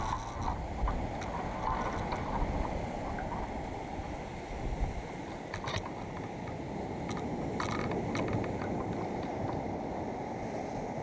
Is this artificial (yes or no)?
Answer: no